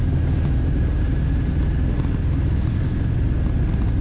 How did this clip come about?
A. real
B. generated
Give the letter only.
A